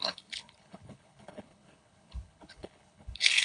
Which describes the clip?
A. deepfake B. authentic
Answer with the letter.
A